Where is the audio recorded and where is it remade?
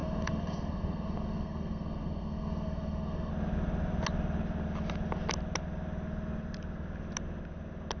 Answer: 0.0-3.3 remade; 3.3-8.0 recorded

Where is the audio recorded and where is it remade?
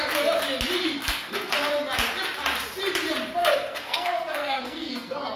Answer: 0.0-1.0 recorded; 1.0-1.5 remade; 1.5-3.4 recorded; 3.4-5.4 remade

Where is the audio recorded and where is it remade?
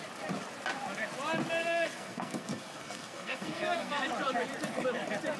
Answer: 0.0-1.6 recorded; 1.6-4.1 remade; 4.1-5.4 recorded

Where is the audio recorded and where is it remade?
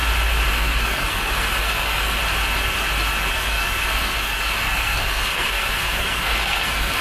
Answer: 0.0-0.5 recorded; 0.5-2.2 remade; 2.2-3.3 recorded; 3.3-7.0 remade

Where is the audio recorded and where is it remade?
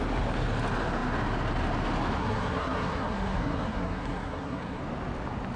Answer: 0.0-2.2 recorded; 2.2-4.8 remade; 4.8-5.6 recorded